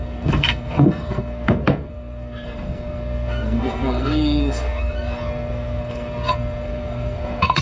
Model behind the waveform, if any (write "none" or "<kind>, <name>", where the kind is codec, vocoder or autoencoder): codec, SNAC